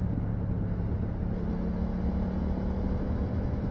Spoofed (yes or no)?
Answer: no